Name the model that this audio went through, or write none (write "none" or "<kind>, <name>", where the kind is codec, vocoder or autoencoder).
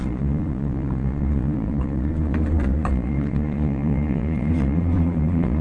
vocoder, Vocos